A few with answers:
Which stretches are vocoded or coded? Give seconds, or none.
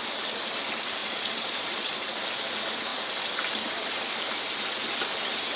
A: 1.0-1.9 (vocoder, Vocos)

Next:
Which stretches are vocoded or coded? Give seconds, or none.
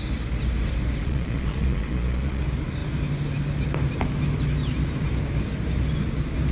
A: 1.0-2.4 (vocoder, Vocos)